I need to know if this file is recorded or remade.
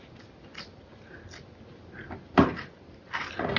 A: recorded